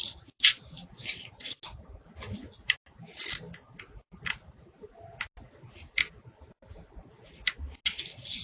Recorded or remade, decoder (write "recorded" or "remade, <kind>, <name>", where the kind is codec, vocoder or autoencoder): recorded